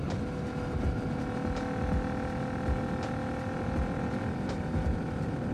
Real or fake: real